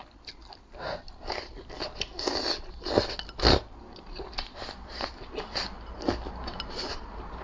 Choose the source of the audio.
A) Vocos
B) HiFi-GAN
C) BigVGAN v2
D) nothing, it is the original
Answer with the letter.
D